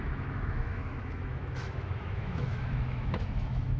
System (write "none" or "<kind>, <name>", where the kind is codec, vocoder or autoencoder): autoencoder, DAC-VAE